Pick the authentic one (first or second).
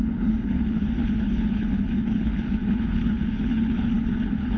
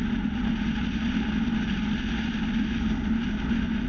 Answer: second